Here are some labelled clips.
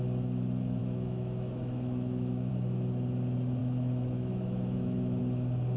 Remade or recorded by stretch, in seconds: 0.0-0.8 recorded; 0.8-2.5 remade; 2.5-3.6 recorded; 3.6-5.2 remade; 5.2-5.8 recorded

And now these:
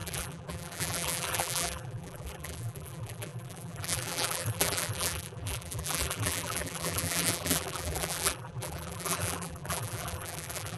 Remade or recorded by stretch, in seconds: 0.0-10.8 remade

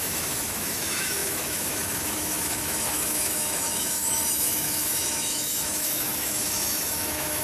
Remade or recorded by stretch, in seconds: 0.0-7.4 remade

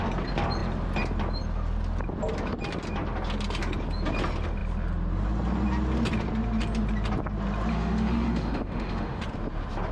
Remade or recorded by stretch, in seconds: 0.0-7.7 recorded; 7.7-9.2 remade; 9.2-9.9 recorded

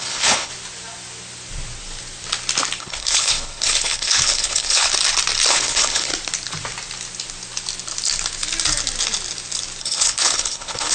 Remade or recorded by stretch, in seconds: 0.0-0.5 remade; 0.5-2.8 recorded; 2.8-4.9 remade; 4.9-5.5 recorded; 5.5-6.1 remade; 6.1-9.8 recorded; 9.8-10.9 remade